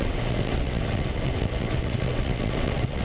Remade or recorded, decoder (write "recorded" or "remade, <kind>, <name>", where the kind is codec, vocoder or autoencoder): remade, vocoder, WaveNeXt